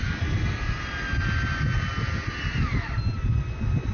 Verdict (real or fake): real